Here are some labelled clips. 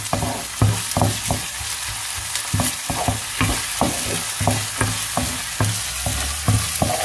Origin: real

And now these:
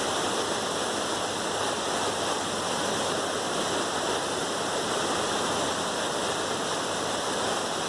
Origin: real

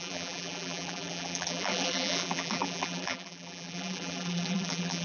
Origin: fake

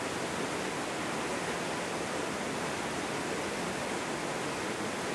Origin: real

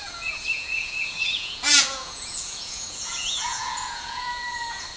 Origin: fake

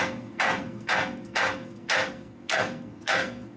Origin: fake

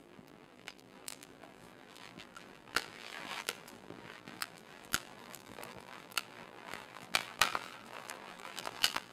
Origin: fake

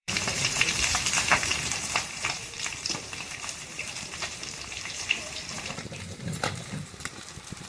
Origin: fake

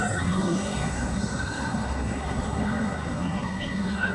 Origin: fake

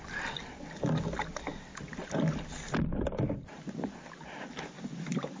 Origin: real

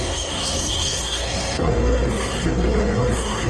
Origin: fake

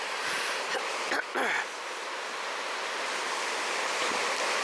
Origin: real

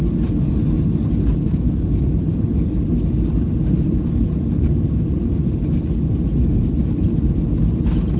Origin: real